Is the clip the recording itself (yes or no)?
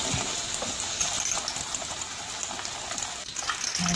yes